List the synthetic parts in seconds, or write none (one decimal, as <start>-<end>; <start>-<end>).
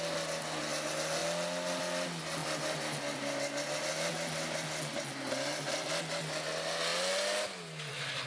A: none